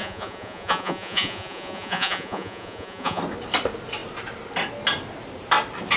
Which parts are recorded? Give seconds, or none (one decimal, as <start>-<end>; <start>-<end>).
3.2-6.0